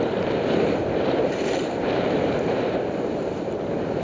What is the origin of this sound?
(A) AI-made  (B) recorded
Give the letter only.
A